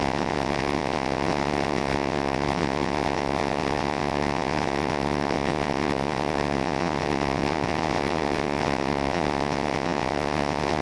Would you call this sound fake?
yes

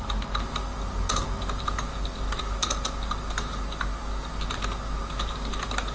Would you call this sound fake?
no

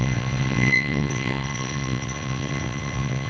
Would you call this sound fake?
yes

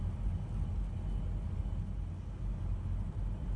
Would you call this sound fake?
no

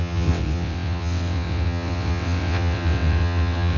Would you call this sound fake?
yes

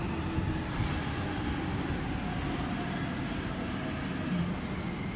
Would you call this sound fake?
no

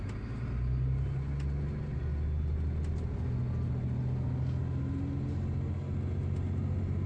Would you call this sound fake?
no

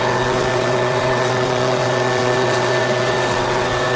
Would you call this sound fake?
yes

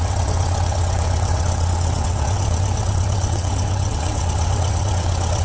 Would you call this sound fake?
yes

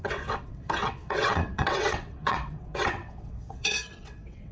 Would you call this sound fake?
yes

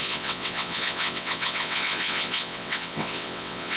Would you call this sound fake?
yes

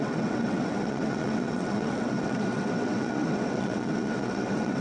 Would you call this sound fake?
yes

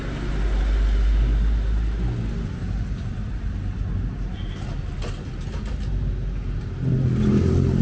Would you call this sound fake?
no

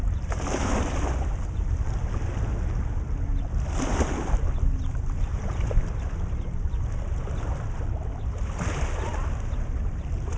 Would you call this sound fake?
no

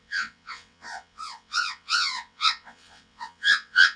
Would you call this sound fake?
yes